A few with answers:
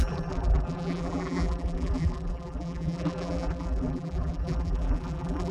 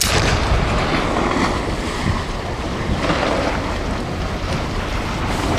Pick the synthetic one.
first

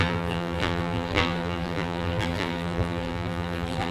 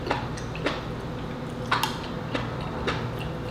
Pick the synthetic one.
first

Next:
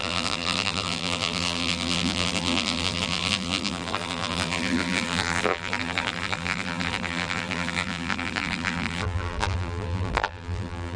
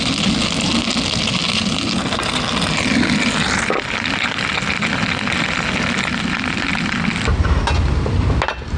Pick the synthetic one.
first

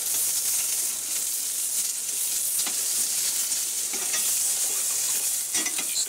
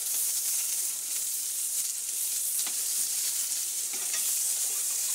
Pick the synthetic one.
second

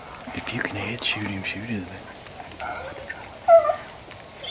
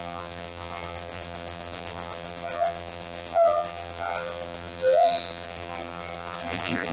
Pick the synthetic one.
second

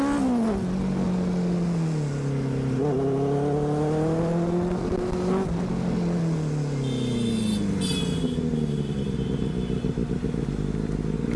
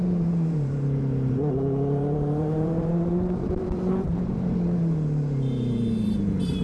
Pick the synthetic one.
second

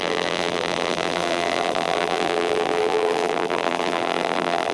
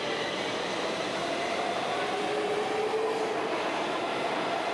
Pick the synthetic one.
first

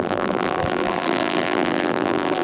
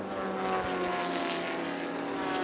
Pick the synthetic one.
first